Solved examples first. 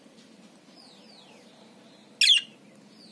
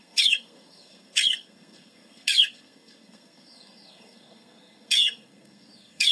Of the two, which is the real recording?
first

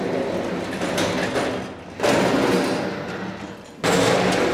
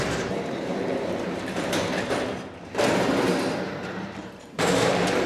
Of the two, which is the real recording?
first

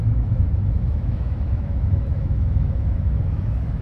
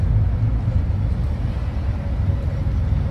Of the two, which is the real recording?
second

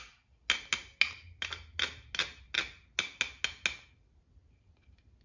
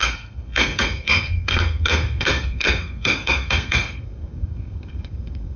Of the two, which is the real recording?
first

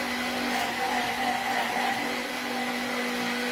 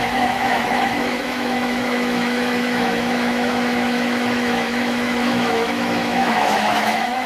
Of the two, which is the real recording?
first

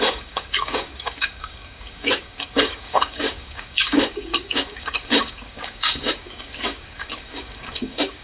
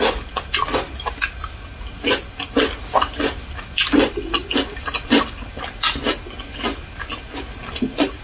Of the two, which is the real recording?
second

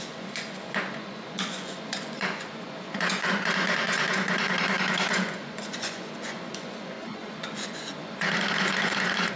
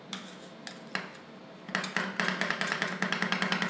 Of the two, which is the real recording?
second